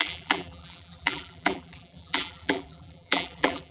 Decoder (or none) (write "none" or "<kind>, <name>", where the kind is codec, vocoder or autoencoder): vocoder, BigVGAN v2